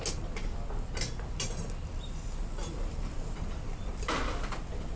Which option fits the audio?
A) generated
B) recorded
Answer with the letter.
B